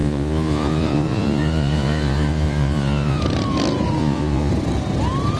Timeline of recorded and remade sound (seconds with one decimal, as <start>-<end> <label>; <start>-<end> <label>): 0.0-3.2 remade; 3.2-4.0 recorded; 4.0-4.5 remade; 4.5-5.4 recorded